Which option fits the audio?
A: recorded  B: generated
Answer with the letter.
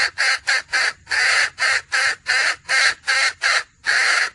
A